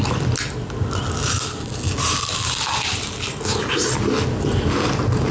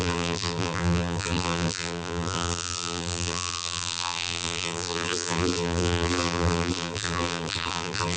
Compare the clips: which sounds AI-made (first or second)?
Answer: second